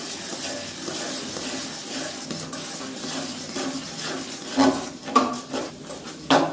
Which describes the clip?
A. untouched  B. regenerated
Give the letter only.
A